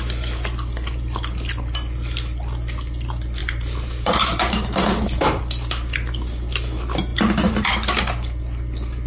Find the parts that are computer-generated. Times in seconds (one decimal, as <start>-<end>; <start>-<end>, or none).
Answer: 3.4-5.4; 7.1-7.7